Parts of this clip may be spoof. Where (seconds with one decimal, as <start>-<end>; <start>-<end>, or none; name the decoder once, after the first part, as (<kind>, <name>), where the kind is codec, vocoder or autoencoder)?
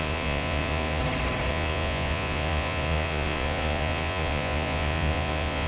0.0-1.0 (vocoder, Vocos); 1.5-5.7